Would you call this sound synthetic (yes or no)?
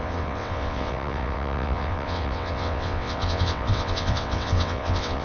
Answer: yes